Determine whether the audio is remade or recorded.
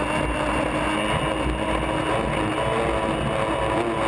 recorded